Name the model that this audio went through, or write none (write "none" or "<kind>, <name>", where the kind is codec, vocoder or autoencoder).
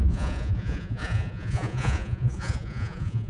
vocoder, Vocos